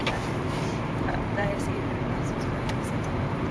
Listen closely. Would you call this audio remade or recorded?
remade